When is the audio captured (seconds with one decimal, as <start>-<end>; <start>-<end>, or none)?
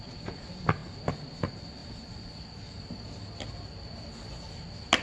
0.0-1.8; 3.5-5.0